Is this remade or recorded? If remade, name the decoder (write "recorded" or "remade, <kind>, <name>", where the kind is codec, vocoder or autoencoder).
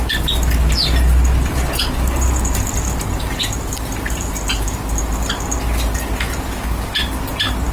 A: recorded